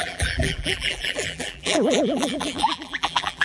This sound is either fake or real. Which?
fake